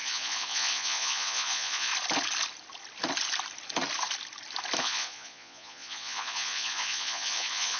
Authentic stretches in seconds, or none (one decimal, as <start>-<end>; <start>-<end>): 1.9-4.8